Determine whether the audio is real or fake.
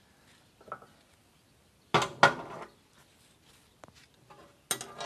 real